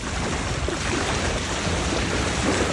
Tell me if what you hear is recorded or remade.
remade